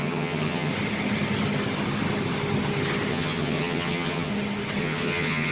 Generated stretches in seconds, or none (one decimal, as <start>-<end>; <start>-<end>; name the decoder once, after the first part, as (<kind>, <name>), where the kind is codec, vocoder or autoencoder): 0.0-0.7 (vocoder, HiFi-GAN); 3.1-4.3; 4.8-5.5